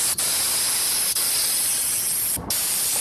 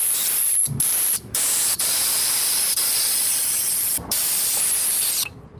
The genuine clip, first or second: first